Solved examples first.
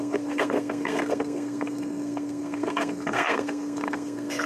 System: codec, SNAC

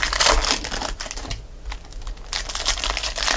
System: none